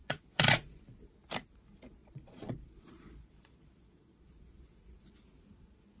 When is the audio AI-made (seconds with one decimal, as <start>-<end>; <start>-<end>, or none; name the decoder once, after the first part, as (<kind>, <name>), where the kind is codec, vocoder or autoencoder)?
0.0-0.8 (vocoder, Vocos); 2.0-5.1